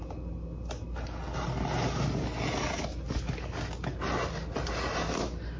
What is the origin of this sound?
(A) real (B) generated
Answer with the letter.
A